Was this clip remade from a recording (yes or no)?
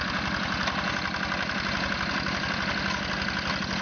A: no